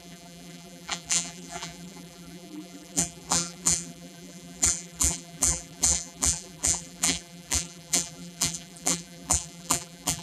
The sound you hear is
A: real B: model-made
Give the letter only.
B